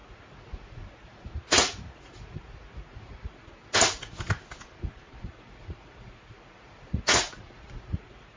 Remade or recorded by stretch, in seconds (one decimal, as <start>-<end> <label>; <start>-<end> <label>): 0.0-3.6 remade; 3.6-5.2 recorded; 5.2-8.4 remade